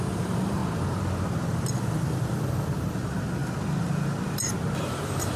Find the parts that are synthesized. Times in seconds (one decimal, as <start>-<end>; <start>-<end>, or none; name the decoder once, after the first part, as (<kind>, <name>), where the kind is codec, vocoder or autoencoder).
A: 0.0-0.6 (vocoder, BigVGAN v2); 2.9-3.4; 4.7-5.4